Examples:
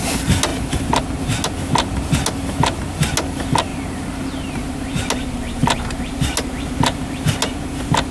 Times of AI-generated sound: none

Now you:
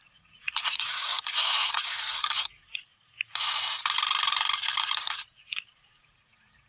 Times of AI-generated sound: 0.0-2.9 (vocoder, Vocos); 4.8-6.7

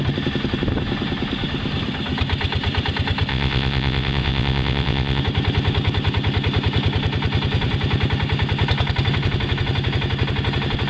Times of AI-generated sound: 3.3-5.2 (vocoder, WaveNeXt)

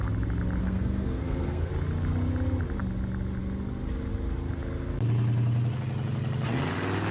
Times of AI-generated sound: 0.6-1.7 (codec, SNAC)

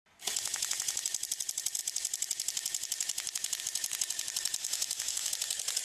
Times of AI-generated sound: 4.6-5.3 (autoencoder, DAC-VAE)

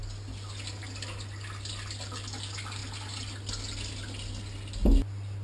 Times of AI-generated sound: none

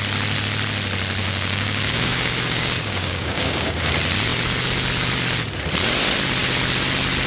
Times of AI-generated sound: 1.2-3.9 (codec, DAC)